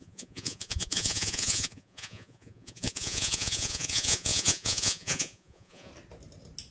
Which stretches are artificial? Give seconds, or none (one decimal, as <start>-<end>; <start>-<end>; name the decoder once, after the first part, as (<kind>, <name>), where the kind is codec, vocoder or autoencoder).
0.0-5.9 (vocoder, Vocos)